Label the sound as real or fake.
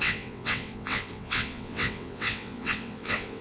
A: fake